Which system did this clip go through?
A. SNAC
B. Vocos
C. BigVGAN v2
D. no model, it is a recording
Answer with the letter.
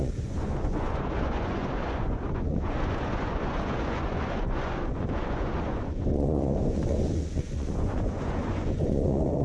B